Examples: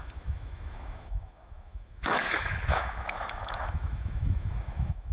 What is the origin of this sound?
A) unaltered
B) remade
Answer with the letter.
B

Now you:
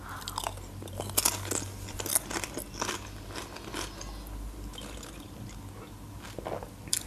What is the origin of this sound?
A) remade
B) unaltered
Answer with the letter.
B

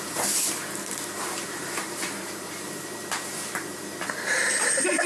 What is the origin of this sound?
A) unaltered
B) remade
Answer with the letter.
B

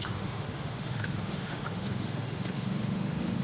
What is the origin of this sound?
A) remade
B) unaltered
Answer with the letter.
A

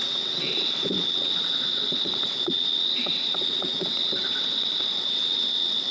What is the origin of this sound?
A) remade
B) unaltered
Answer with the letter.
A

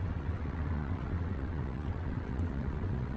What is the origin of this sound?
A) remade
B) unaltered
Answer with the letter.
A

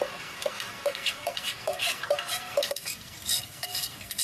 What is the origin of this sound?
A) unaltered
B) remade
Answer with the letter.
B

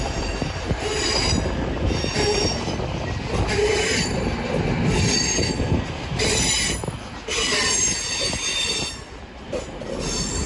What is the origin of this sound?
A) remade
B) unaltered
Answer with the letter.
B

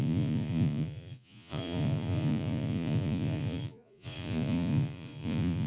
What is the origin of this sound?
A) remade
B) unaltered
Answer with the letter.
A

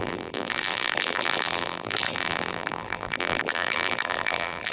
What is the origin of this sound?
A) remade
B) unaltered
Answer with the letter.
A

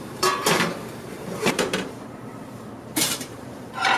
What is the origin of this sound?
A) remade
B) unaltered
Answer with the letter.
A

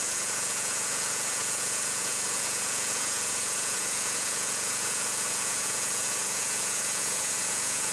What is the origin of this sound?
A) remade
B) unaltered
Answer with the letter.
A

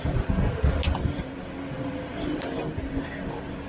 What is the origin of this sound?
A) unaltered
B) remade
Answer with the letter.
A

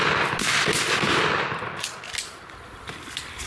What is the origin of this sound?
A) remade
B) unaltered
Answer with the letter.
B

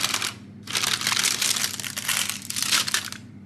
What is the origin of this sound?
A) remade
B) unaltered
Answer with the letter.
B